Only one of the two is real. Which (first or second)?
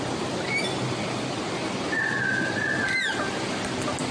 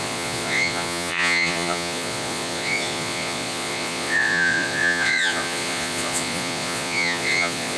first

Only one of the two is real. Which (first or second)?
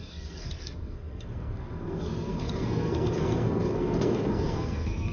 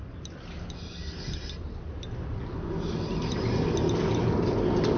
second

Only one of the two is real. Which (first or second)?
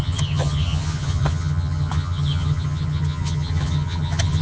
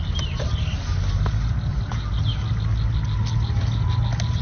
second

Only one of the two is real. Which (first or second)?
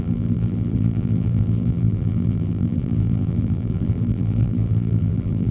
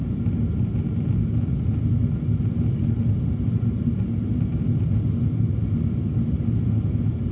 second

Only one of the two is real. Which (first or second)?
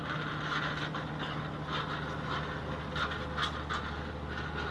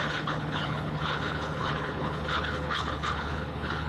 first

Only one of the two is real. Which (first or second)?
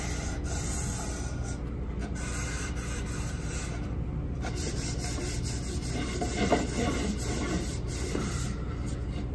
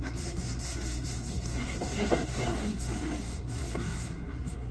first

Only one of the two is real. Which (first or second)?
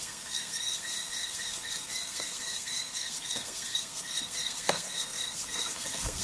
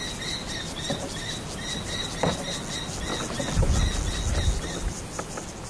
second